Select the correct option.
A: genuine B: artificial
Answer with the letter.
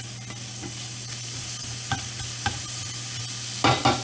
A